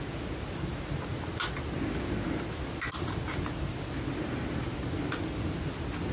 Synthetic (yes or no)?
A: no